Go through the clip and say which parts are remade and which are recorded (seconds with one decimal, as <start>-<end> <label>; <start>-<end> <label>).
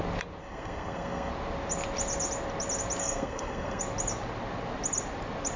0.0-0.4 recorded; 0.4-1.3 remade; 1.3-3.0 recorded; 3.0-3.8 remade; 3.8-5.6 recorded